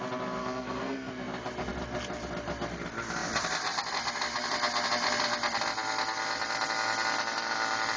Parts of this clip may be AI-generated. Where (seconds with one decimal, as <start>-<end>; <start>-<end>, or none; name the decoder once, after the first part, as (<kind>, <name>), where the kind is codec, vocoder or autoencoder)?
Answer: 0.4-1.1 (codec, SNAC)